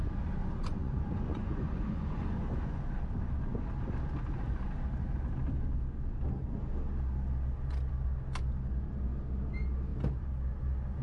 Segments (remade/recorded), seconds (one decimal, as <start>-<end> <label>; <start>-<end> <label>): 0.0-0.4 recorded; 0.4-2.8 remade; 2.8-11.0 recorded